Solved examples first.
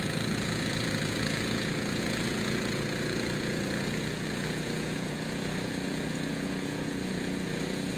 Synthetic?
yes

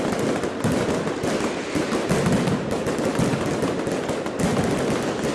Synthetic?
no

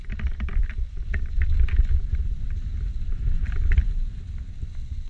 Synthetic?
no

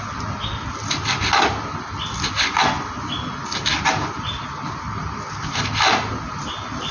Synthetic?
no